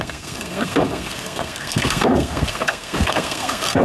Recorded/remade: remade